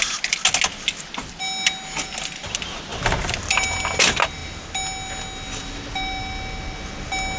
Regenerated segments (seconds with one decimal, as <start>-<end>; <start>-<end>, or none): none